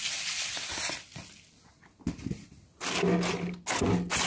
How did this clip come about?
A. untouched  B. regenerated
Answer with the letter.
A